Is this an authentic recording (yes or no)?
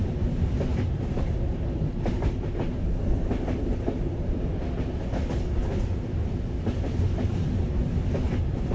yes